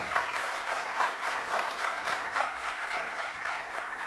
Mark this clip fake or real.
fake